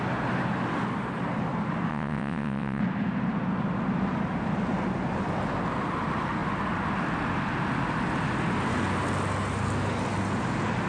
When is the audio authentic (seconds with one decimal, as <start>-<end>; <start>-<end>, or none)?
0.0-1.9; 2.8-10.9